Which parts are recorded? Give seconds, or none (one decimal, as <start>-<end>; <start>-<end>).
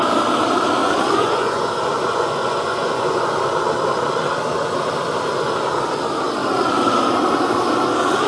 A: 0.0-0.8; 3.3-8.3